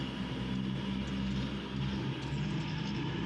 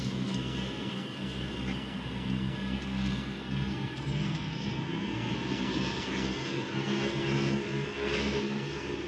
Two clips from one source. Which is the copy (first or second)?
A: second